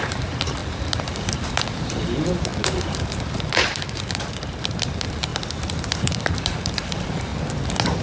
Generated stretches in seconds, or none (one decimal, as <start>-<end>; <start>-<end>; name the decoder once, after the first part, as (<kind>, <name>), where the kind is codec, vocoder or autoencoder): 0.0-5.3 (vocoder, BigVGAN v2); 6.0-7.3